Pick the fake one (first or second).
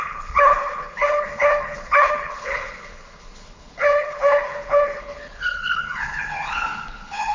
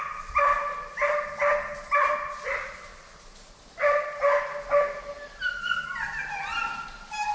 first